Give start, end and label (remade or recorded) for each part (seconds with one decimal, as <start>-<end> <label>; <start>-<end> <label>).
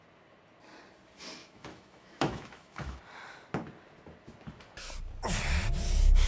0.0-1.4 recorded; 1.4-3.0 remade; 3.0-6.3 recorded